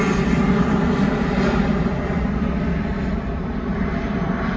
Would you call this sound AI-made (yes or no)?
no